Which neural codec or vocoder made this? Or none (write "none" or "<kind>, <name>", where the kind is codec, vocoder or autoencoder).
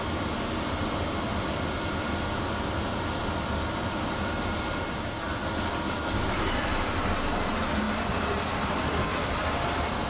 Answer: none